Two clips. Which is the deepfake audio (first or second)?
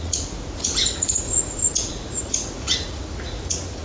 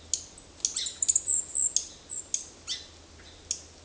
first